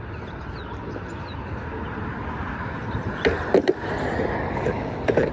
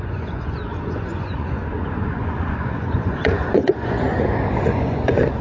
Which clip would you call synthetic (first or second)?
second